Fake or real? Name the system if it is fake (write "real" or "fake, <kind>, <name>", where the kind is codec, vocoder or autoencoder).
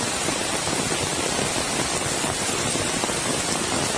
real